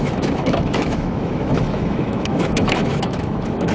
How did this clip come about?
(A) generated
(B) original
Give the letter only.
A